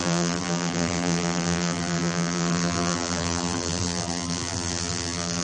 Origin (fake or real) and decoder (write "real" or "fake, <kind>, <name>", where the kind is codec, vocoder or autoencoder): fake, vocoder, BigVGAN v2